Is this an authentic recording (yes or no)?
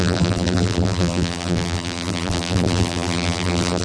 no